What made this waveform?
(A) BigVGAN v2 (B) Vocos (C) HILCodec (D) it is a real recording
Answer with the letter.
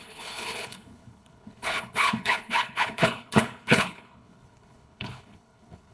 C